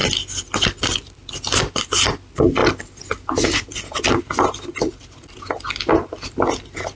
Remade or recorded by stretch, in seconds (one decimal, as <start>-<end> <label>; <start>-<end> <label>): 0.0-7.0 recorded